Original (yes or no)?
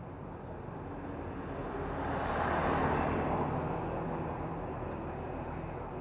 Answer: yes